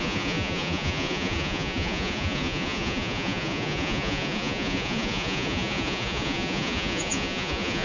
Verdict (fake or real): fake